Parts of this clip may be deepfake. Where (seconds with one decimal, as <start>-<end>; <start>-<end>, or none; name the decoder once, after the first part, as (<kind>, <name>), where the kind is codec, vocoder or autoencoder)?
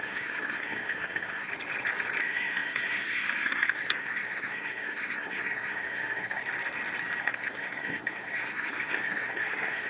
0.0-1.5 (codec, SNAC); 2.2-6.4; 7.2-9.9